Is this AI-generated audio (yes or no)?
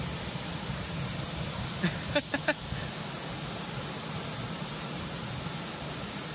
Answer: no